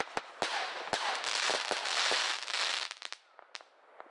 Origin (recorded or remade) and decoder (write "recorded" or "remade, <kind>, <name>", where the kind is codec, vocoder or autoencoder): recorded